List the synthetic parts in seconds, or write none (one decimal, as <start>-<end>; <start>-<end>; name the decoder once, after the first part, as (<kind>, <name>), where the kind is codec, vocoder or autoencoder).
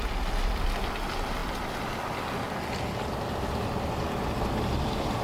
none